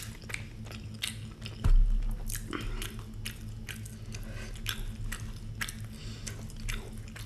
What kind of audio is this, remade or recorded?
recorded